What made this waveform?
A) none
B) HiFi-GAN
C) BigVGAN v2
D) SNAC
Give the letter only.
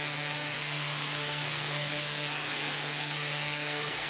D